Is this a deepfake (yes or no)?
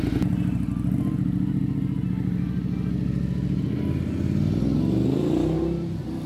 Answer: no